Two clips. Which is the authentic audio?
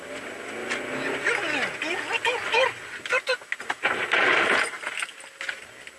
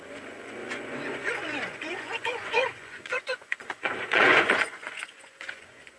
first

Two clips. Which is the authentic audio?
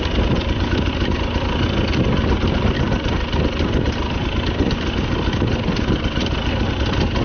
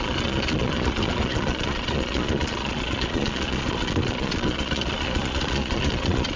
first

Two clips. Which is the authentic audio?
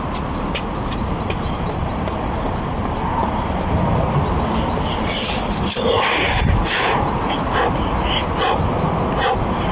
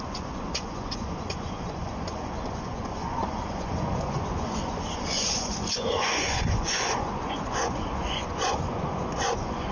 first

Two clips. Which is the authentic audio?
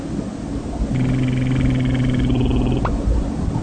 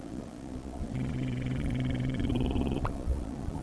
first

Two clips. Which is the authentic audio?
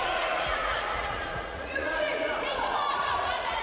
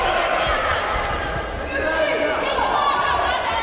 second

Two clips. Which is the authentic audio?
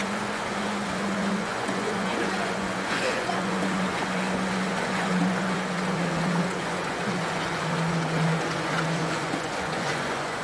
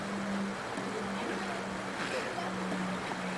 second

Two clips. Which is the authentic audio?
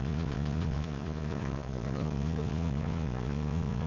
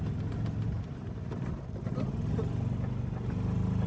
second